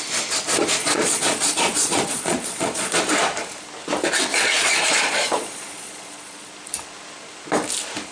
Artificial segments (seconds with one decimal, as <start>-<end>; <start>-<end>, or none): 0.8-3.0; 4.3-6.5